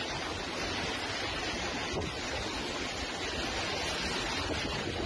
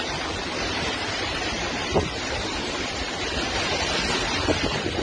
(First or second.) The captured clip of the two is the first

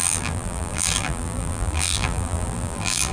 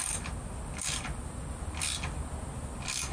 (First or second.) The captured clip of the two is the second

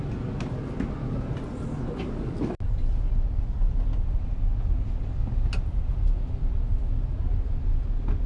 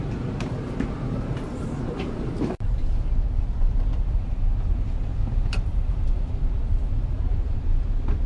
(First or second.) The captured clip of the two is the first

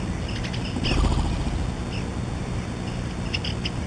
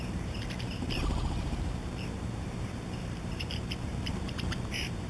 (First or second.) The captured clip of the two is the first